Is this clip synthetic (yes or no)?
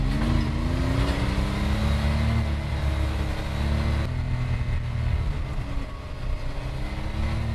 no